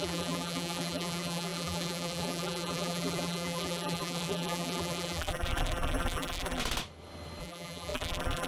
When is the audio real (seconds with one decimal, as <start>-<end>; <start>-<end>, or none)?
6.6-7.4